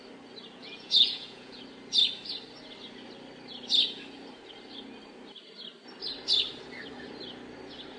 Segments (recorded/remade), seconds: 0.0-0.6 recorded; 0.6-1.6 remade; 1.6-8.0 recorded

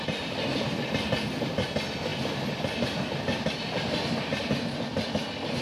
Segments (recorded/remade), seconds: 0.0-5.6 recorded

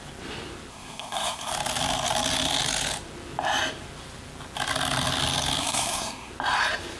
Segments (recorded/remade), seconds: 0.0-0.7 recorded; 0.7-1.5 remade; 1.5-5.6 recorded; 5.6-6.3 remade; 6.3-7.0 recorded

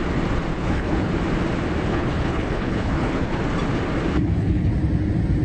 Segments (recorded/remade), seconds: 0.0-0.5 recorded; 0.5-1.1 remade; 1.1-1.9 recorded; 1.9-3.4 remade; 3.4-4.1 recorded; 4.1-4.7 remade; 4.7-5.4 recorded